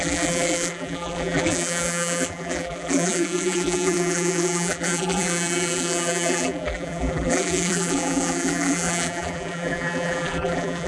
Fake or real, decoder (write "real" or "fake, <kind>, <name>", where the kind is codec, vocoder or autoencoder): fake, vocoder, BigVGAN v2